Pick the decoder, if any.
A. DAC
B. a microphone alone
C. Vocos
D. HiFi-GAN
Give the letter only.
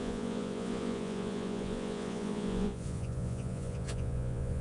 C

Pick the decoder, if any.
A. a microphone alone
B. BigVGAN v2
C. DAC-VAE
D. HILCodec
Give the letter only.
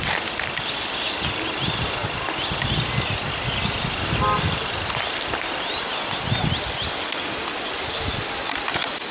A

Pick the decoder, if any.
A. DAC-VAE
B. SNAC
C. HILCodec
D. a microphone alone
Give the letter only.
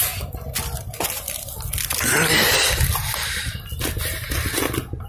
D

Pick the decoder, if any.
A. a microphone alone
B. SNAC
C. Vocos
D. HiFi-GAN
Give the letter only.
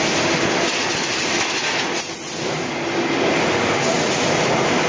A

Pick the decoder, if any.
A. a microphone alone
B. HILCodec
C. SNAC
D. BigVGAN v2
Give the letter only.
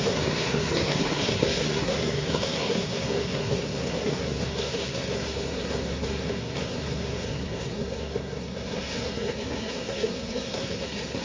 C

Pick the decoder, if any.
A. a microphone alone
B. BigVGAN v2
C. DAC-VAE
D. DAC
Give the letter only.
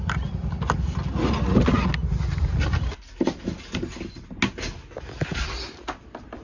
A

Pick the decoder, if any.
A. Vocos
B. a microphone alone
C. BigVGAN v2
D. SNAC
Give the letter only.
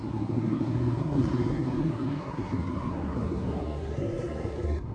D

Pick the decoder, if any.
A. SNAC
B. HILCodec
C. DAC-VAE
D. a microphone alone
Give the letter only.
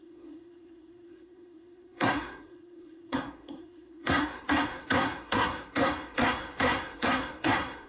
A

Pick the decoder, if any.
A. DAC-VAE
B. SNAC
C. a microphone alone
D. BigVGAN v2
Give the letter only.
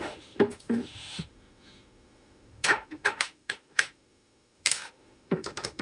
A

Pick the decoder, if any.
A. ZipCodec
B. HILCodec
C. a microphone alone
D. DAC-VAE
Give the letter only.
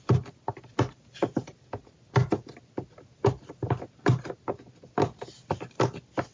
C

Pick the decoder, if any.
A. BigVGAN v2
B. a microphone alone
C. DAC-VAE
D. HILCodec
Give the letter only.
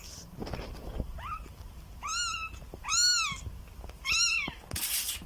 B